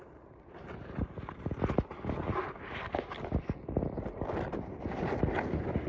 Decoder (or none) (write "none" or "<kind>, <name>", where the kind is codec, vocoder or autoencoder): none